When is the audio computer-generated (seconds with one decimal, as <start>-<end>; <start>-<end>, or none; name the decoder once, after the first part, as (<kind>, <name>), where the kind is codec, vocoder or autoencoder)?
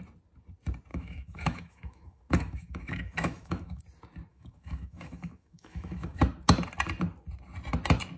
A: 0.9-3.8 (autoencoder, DAC-VAE); 4.3-6.2